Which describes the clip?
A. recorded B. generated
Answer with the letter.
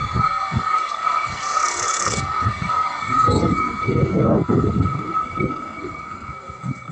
B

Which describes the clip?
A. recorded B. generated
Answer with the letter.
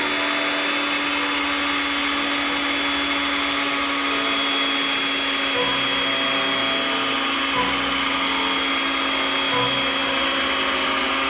A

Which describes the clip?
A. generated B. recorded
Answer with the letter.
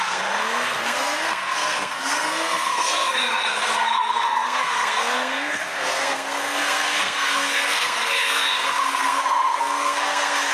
A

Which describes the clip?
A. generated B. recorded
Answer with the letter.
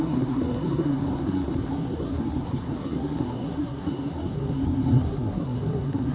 A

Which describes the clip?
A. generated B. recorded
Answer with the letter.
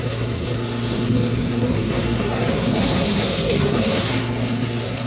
A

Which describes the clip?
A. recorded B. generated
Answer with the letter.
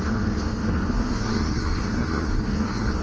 B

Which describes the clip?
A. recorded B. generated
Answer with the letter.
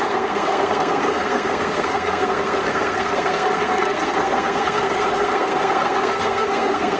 B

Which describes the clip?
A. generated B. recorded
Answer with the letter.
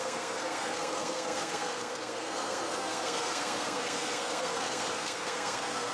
A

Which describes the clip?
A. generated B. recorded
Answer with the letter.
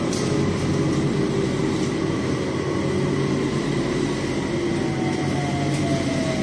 B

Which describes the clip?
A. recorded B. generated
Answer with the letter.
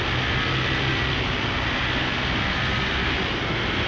A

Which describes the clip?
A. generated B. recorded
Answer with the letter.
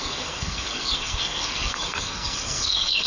A